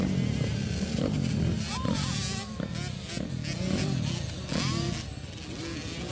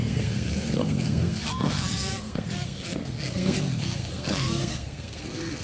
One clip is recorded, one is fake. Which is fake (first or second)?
second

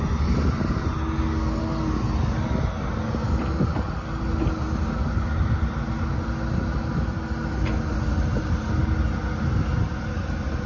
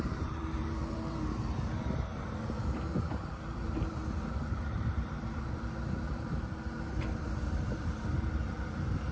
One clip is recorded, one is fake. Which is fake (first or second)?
second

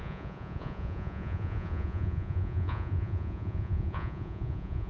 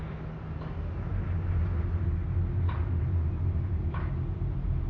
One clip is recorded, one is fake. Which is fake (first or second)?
first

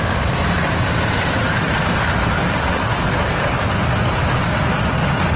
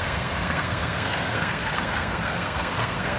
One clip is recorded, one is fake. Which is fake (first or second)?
second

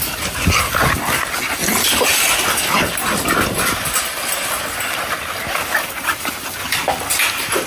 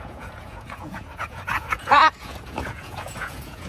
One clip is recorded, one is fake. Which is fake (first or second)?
second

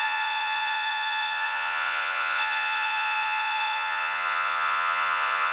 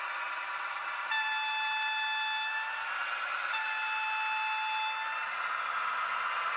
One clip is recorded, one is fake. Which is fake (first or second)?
first